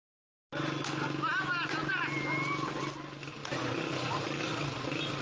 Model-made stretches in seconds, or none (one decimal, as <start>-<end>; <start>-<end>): none

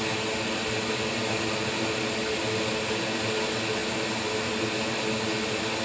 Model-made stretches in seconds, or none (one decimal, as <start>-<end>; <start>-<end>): none

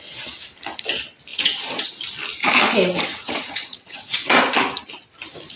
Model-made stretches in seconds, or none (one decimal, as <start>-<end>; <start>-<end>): 1.3-1.9; 3.1-4.4